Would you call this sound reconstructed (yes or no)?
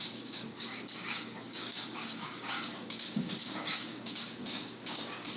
yes